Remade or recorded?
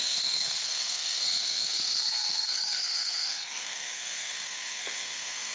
remade